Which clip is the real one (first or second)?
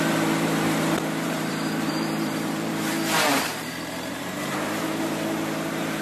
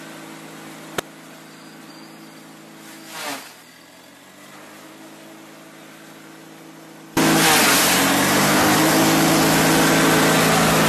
second